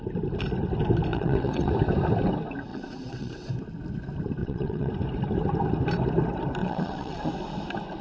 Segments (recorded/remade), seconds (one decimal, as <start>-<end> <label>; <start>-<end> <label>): 0.0-1.1 recorded; 1.1-1.7 remade; 1.7-2.7 recorded; 2.7-3.5 remade; 3.5-4.4 recorded; 4.4-4.9 remade; 4.9-6.6 recorded; 6.6-7.3 remade; 7.3-8.0 recorded